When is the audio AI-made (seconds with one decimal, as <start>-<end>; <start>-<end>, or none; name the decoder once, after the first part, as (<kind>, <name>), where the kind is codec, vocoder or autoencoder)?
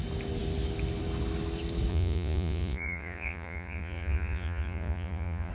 1.9-5.5 (vocoder, Vocos)